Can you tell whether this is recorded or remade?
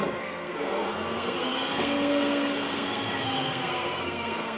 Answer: remade